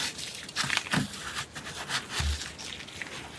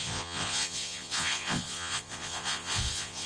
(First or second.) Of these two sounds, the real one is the first